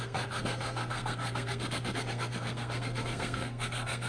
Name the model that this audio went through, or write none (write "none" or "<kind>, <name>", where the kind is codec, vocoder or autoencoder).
codec, SNAC